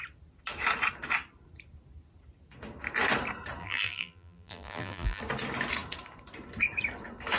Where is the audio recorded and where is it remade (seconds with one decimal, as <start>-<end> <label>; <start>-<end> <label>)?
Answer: 0.0-3.6 recorded; 3.6-5.2 remade; 5.2-7.4 recorded